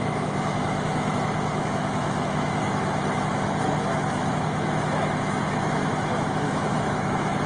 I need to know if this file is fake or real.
fake